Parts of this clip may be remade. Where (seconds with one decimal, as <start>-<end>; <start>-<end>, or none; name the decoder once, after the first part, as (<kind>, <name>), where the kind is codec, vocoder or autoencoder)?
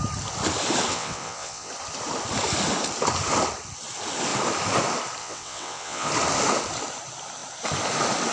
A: 0.9-1.7 (vocoder, WaveNeXt); 5.2-6.1